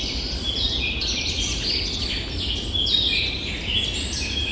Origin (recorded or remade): recorded